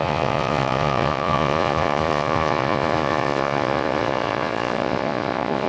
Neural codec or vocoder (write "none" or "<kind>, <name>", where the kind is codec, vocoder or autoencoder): vocoder, Vocos